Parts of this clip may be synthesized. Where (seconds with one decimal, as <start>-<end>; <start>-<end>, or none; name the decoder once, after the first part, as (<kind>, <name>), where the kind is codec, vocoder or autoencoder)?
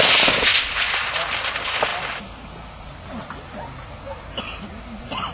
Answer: 0.5-1.1 (vocoder, BigVGAN v2)